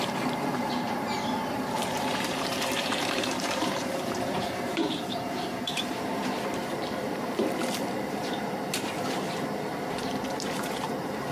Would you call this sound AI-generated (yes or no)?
yes